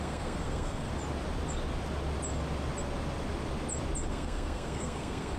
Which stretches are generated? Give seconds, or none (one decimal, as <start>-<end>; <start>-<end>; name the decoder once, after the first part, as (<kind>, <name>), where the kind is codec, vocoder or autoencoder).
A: 0.0-0.9 (codec, SNAC); 4.1-5.4